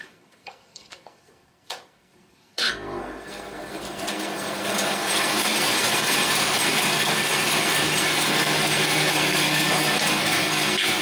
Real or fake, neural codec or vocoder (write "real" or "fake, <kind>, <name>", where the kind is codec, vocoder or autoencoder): fake, codec, SNAC